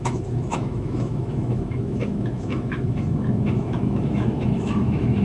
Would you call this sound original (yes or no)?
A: no